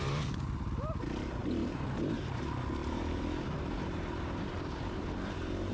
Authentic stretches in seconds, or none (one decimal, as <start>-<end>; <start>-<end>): 0.0-1.4; 2.4-2.8